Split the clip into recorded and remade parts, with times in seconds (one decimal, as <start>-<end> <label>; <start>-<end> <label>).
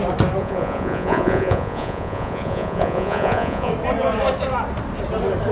0.0-0.4 recorded; 0.4-3.7 remade; 3.7-5.5 recorded